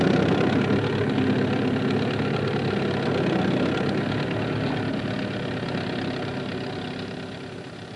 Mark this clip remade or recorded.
recorded